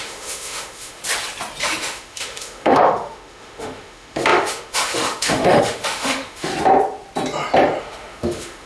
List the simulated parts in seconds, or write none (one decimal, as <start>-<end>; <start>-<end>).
0.0-1.0; 1.6-6.5; 7.8-8.7